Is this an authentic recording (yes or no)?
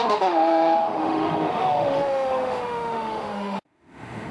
no